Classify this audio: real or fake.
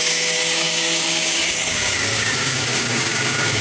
fake